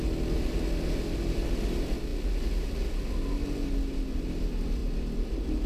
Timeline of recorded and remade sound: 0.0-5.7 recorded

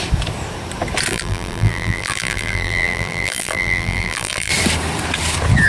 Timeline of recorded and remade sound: 0.0-1.1 recorded; 1.1-4.5 remade; 4.5-5.7 recorded

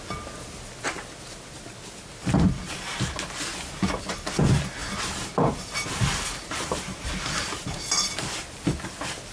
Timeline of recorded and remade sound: 0.0-4.8 recorded; 4.8-8.3 remade; 8.3-9.3 recorded

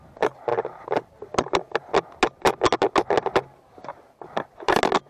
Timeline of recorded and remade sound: 0.0-5.1 recorded